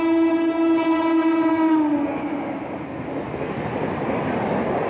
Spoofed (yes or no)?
no